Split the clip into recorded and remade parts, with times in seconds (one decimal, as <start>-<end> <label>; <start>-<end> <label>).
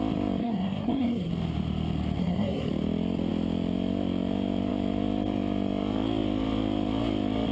0.0-0.4 recorded; 0.4-1.3 remade; 1.3-2.2 recorded; 2.2-2.7 remade; 2.7-7.5 recorded